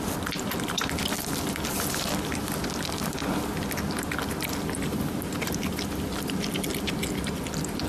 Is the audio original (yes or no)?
yes